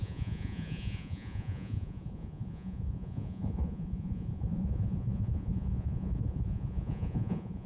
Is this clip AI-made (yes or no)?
yes